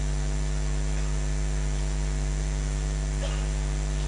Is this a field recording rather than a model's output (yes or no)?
yes